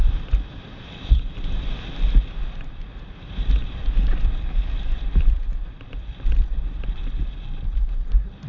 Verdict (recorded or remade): remade